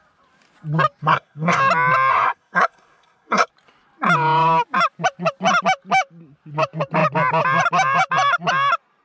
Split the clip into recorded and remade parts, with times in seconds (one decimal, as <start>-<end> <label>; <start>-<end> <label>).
0.0-1.0 recorded; 1.0-1.6 remade; 1.6-2.1 recorded; 2.1-3.5 remade; 3.5-9.0 recorded